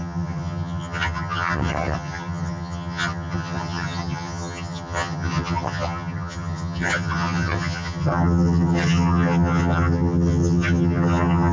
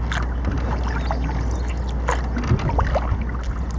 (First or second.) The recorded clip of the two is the second